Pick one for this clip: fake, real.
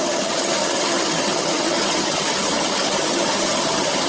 fake